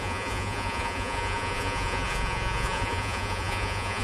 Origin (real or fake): fake